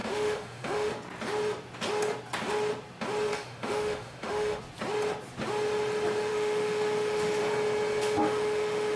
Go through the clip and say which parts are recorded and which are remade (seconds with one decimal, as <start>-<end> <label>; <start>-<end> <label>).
0.0-0.9 remade; 0.9-3.3 recorded; 3.3-4.6 remade; 4.6-6.3 recorded; 6.3-7.4 remade; 7.4-8.2 recorded; 8.2-9.0 remade